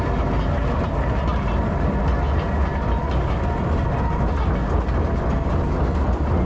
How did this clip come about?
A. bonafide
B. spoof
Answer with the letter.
A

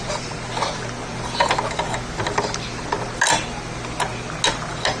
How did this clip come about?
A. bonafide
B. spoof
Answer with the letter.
A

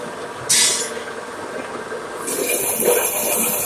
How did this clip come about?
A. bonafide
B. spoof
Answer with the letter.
A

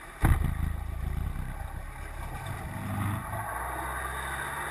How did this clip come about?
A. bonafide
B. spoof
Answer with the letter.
A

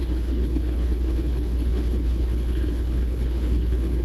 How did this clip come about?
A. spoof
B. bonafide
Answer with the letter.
A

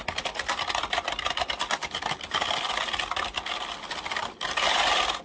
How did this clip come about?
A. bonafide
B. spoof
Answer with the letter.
A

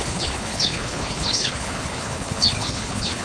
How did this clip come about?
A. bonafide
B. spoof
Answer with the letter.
B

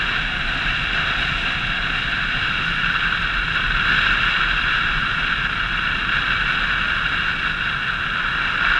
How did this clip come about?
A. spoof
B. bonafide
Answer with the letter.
B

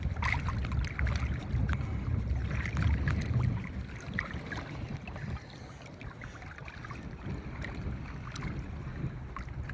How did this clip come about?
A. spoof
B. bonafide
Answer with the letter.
B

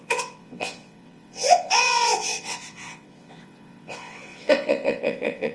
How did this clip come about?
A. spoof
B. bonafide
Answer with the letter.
A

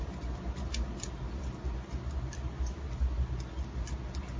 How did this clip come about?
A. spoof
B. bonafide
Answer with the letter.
B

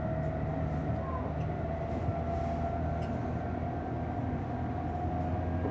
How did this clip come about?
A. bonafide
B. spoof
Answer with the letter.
A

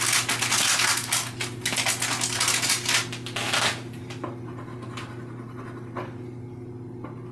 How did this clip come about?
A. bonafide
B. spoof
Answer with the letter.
A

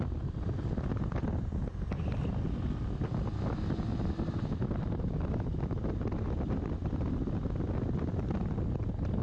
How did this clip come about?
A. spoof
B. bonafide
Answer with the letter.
B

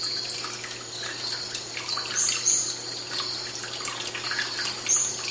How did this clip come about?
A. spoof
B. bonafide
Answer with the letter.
B